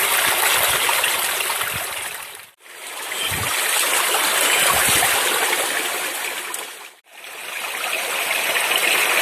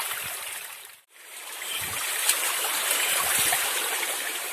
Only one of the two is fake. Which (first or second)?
second